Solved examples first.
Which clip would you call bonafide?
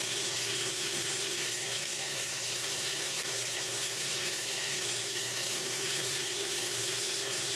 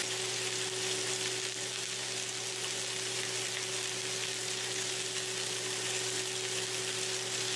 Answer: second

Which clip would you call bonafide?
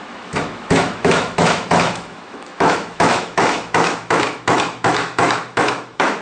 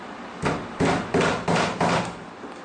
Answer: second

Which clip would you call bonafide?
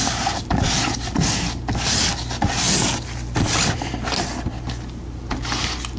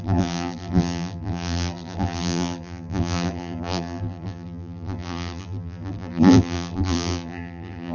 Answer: first